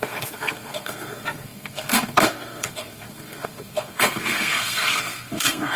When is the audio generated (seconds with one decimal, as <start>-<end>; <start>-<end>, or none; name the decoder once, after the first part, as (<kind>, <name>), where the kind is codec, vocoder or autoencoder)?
0.0-5.8 (codec, SNAC)

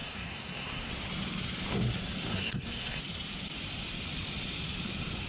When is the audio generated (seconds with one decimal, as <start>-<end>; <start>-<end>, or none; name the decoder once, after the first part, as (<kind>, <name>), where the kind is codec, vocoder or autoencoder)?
0.0-0.9 (codec, SNAC); 2.3-3.0

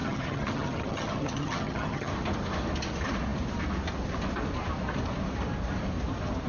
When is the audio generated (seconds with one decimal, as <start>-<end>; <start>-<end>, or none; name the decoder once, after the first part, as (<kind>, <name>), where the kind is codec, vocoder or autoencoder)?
0.0-2.1 (vocoder, HiFi-GAN)

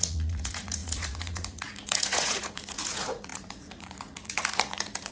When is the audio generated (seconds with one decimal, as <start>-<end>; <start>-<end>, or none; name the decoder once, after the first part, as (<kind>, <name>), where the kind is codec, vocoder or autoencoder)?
0.0-5.1 (vocoder, Vocos)

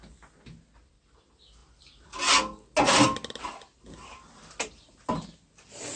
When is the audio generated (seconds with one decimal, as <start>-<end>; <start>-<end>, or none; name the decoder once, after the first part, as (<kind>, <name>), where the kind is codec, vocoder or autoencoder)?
none

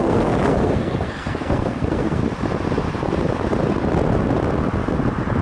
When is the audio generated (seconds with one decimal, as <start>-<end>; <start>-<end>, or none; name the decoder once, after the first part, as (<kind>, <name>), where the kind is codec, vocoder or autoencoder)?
0.0-2.2 (codec, SNAC)